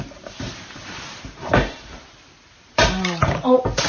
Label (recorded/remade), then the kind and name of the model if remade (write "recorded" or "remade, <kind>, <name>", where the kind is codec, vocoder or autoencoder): remade, vocoder, BigVGAN v2